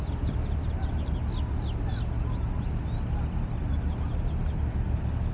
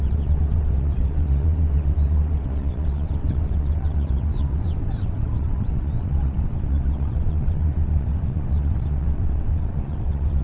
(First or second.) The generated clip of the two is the second